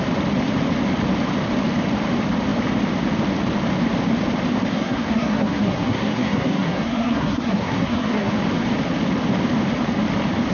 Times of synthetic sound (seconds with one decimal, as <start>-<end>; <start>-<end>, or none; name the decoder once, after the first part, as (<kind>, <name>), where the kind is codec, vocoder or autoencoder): 4.7-8.3 (codec, SNAC)

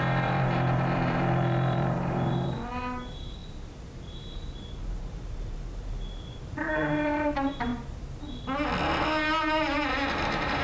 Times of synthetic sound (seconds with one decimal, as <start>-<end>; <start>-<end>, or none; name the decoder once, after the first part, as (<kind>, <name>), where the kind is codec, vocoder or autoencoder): 0.0-3.4 (vocoder, BigVGAN v2); 4.0-7.7; 10.1-10.6

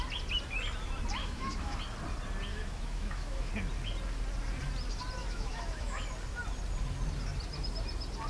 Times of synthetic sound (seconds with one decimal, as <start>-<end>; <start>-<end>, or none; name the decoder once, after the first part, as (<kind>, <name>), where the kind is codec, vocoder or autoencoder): 1.2-1.8 (autoencoder, DAC-VAE); 2.5-3.5; 5.2-6.0

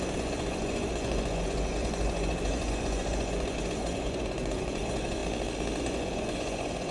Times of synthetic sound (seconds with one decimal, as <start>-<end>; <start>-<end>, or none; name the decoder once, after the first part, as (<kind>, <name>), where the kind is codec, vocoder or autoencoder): 0.0-5.2 (vocoder, Vocos); 5.8-6.9

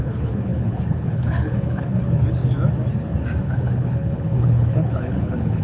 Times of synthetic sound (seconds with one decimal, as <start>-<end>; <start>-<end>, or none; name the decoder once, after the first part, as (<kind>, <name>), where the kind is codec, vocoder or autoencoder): 0.0-2.4 (codec, HILCodec); 3.4-5.6

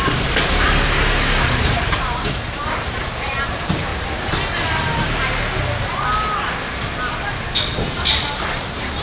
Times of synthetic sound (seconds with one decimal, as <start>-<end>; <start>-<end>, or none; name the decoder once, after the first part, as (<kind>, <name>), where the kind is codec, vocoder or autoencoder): 0.0-3.9 (vocoder, BigVGAN v2); 7.6-9.0

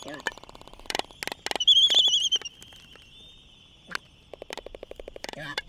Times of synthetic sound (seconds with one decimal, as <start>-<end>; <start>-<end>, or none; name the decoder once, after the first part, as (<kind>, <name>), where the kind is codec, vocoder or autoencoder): 0.0-1.2 (vocoder, BigVGAN v2); 4.6-5.7